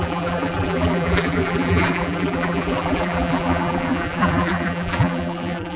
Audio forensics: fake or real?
fake